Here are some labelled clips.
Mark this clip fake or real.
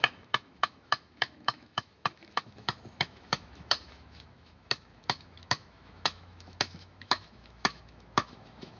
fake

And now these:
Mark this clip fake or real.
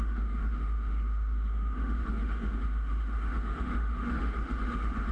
fake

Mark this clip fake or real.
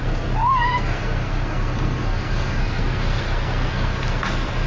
fake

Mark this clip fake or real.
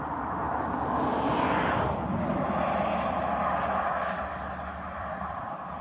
fake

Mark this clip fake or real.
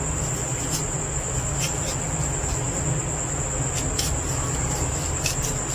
real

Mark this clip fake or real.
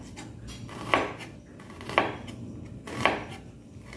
real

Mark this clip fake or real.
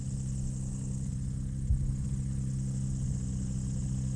real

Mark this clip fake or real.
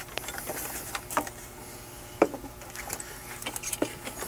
fake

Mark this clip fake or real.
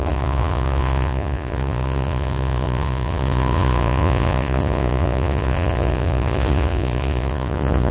fake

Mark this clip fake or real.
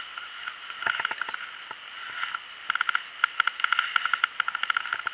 real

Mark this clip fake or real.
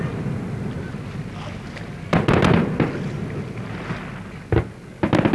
real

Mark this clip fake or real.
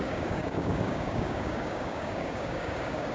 fake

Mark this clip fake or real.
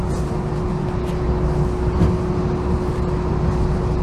real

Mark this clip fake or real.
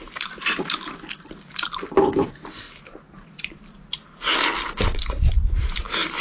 real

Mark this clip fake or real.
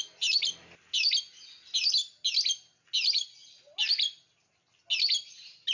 real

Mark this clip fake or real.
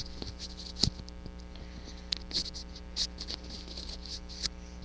real